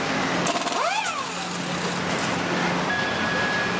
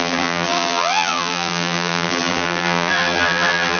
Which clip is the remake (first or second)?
second